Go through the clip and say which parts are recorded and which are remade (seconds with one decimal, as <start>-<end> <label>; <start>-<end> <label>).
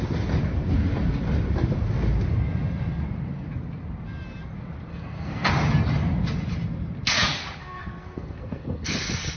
0.0-4.9 recorded; 4.9-5.5 remade; 5.5-7.6 recorded; 7.6-9.4 remade